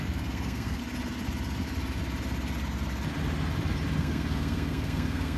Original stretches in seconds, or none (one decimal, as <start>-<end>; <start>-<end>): 0.8-4.0